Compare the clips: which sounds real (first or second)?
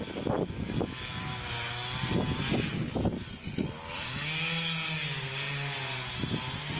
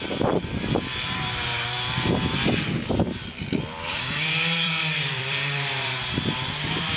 first